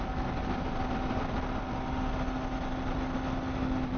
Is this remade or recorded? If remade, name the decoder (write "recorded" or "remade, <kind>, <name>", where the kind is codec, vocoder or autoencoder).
recorded